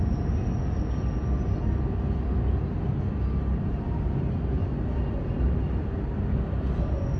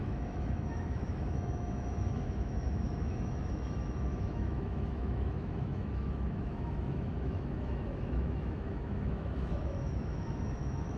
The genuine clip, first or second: first